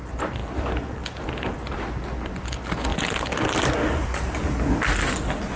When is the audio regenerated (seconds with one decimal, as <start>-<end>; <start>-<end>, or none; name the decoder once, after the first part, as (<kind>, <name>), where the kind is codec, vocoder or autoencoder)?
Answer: none